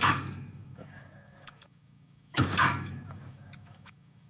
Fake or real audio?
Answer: fake